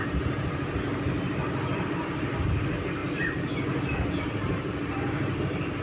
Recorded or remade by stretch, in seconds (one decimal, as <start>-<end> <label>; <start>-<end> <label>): 0.0-1.8 recorded; 1.8-3.0 remade; 3.0-4.2 recorded; 4.2-5.8 remade